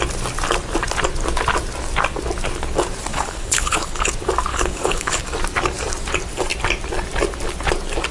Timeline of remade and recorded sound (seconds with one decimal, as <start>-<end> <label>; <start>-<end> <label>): 0.0-3.1 recorded; 3.1-4.1 remade; 4.1-4.5 recorded; 4.5-5.2 remade; 5.2-8.1 recorded